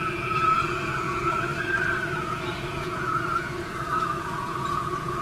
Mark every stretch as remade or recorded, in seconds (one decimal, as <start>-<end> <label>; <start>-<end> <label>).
0.0-1.5 remade; 1.5-2.2 recorded; 2.2-5.2 remade